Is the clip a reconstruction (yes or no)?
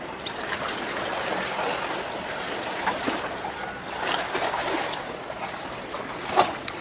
no